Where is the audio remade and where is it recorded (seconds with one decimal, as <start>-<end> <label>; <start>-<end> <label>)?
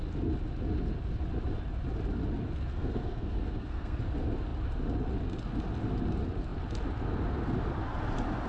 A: 0.0-2.7 recorded; 2.7-4.0 remade; 4.0-8.5 recorded